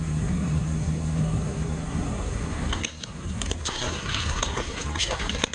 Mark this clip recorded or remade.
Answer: remade